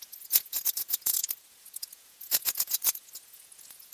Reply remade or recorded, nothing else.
remade